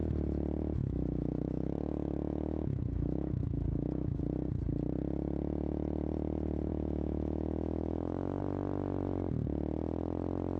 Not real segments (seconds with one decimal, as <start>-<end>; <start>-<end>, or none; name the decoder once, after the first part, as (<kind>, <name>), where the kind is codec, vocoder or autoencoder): 0.8-4.2 (autoencoder, DAC-VAE); 6.7-8.4